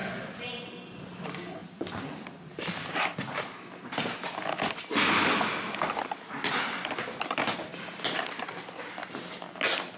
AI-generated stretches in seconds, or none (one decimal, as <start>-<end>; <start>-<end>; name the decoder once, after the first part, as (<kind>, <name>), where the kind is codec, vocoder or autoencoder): 1.6-4.9 (vocoder, BigVGAN v2)